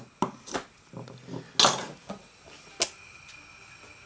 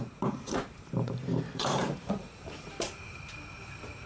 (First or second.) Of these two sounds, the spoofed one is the second